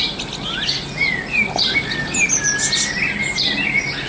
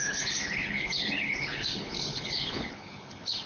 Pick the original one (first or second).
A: first